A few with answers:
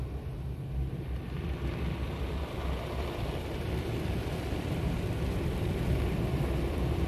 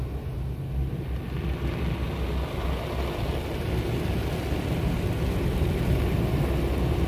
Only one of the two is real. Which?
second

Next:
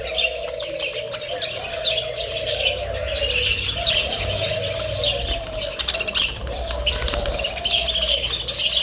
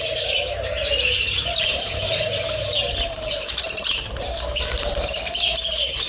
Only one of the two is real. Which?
first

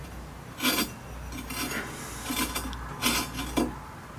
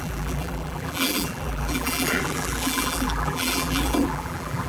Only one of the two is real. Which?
first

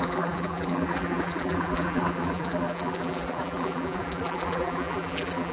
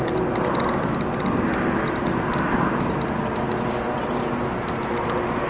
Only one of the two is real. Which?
second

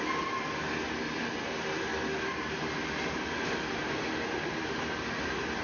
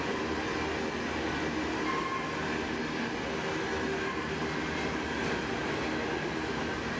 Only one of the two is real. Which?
second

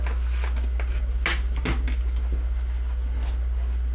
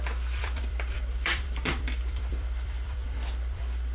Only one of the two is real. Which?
first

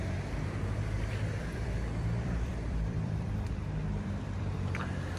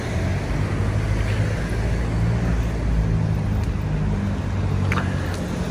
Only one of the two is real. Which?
second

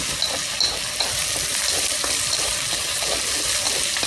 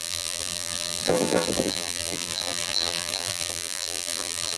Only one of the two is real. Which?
first